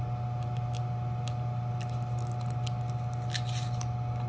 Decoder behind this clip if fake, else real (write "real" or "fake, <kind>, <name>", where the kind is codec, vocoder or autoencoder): real